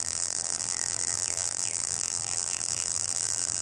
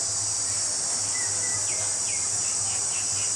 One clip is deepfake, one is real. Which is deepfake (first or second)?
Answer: first